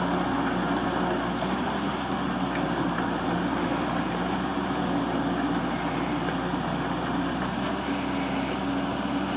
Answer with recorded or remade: recorded